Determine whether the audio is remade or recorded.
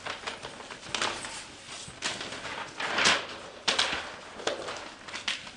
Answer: recorded